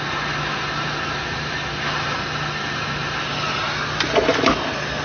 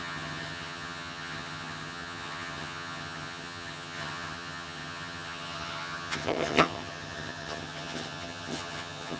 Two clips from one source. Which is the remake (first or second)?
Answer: second